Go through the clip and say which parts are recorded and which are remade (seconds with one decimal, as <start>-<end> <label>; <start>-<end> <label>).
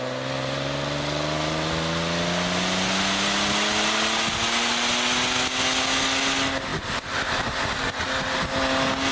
0.0-9.1 recorded